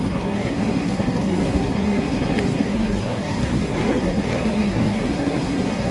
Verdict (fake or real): fake